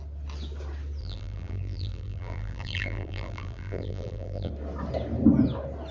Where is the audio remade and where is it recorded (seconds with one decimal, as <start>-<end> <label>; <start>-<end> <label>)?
0.0-1.0 recorded; 1.0-4.5 remade; 4.5-5.9 recorded